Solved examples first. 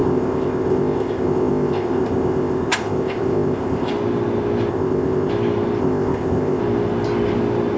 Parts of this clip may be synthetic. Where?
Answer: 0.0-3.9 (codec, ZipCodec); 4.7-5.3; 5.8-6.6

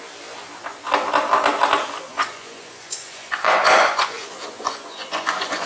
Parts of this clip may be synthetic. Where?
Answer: 2.1-5.7 (vocoder, Vocos)

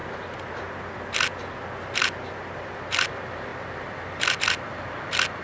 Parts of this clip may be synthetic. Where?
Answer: none

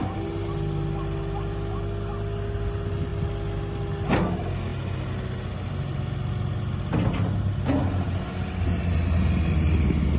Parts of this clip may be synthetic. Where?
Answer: none

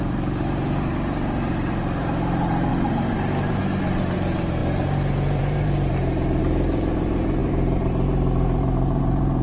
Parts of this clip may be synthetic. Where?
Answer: 0.0-9.4 (vocoder, BigVGAN v2)

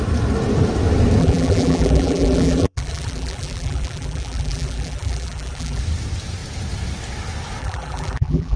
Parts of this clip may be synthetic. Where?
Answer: 1.2-5.8 (vocoder, BigVGAN v2); 7.6-8.6

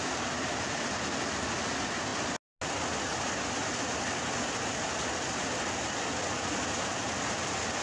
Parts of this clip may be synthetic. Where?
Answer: none

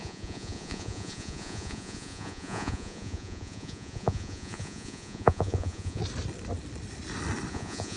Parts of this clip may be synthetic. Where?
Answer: 0.0-6.0 (vocoder, Vocos); 7.5-8.0